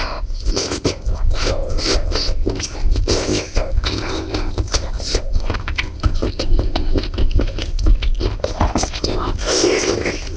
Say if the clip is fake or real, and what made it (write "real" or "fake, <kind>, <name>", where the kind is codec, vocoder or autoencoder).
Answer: fake, codec, ZipCodec